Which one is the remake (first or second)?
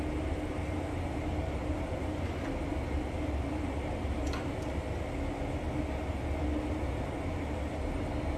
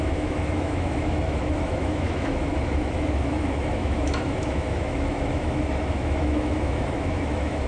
second